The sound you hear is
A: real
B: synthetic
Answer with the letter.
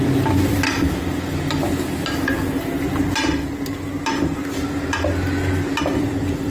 A